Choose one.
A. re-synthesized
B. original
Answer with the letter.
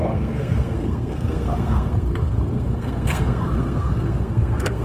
A